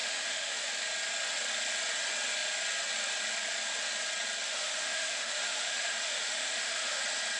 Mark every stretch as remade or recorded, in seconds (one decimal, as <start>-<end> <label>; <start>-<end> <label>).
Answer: 0.0-0.7 remade; 0.7-4.5 recorded; 4.5-7.0 remade; 7.0-7.4 recorded